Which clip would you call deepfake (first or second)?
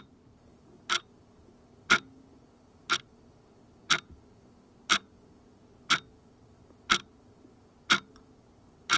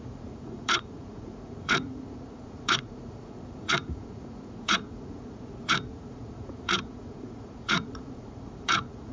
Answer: second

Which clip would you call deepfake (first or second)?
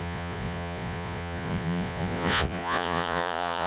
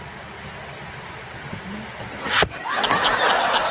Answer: first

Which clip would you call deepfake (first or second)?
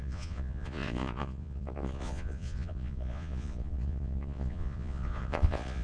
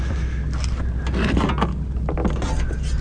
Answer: first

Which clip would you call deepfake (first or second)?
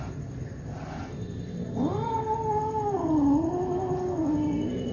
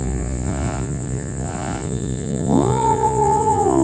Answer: second